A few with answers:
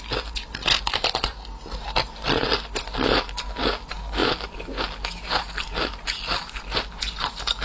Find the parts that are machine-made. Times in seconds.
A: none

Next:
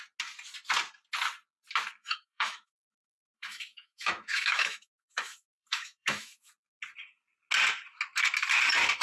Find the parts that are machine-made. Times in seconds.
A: 2.0-6.5

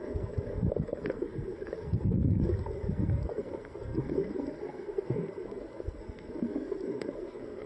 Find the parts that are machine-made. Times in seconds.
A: 0.0-7.7

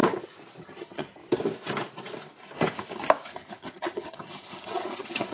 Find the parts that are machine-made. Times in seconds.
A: 0.6-1.2; 3.3-5.3

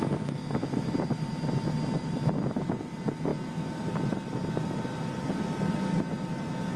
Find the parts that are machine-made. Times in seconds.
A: none